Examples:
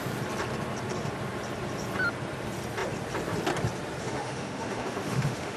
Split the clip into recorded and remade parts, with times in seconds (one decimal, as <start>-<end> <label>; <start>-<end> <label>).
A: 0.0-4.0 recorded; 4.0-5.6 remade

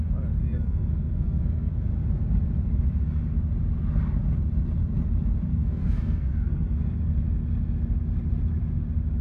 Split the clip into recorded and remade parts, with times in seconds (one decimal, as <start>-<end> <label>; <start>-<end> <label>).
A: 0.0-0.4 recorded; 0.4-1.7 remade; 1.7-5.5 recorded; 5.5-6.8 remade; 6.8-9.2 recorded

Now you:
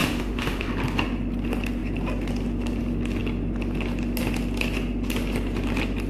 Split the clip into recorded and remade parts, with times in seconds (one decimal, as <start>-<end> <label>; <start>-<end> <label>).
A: 0.0-0.7 remade; 0.7-6.1 recorded

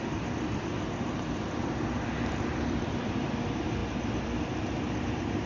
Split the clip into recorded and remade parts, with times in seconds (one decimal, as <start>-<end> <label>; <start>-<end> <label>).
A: 0.0-5.5 recorded